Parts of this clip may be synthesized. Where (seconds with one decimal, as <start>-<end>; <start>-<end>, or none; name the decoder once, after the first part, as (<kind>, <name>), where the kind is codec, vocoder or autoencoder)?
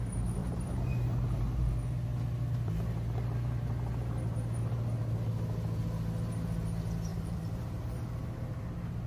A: 0.4-1.7 (vocoder, BigVGAN v2); 7.1-8.6